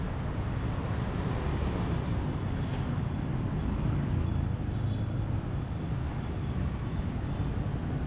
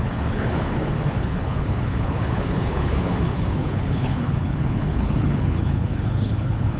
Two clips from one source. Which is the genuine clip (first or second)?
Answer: first